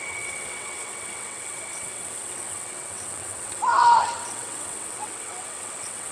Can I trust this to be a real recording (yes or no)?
no